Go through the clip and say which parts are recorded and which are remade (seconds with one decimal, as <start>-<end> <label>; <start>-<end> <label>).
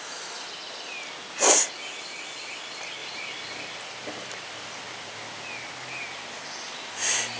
0.0-7.4 recorded